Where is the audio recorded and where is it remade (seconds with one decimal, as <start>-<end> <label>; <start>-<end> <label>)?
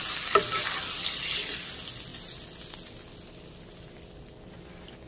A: 0.0-5.1 recorded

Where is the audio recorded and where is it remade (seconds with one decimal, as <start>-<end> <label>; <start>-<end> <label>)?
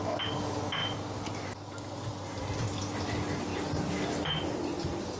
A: 0.0-5.2 recorded